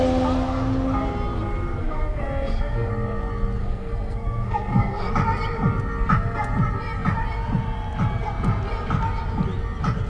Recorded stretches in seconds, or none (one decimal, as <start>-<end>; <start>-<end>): 0.0-1.8; 2.9-3.6; 5.1-10.1